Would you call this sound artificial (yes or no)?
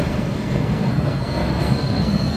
yes